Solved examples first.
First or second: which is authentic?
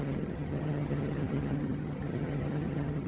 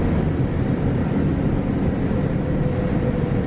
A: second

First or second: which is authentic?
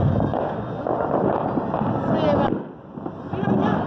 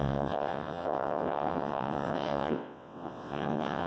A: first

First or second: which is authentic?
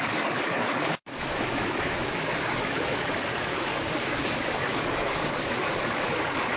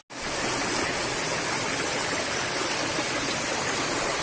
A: second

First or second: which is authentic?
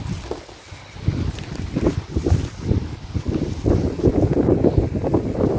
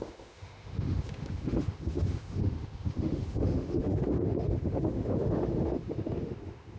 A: first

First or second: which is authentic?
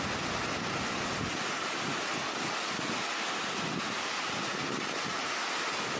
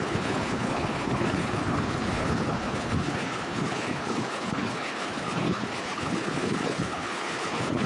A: first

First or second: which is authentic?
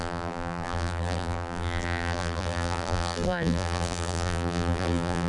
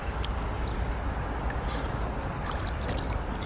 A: second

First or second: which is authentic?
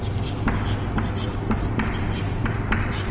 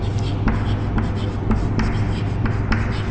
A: second